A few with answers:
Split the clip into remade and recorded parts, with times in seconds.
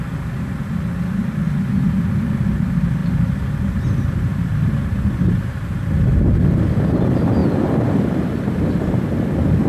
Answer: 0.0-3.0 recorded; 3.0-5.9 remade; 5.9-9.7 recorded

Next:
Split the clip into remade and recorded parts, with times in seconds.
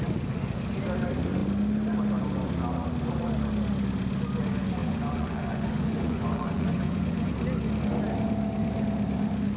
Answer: 0.0-4.8 recorded; 4.8-7.3 remade; 7.3-9.6 recorded